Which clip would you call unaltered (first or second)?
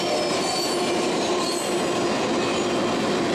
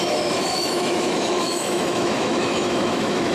first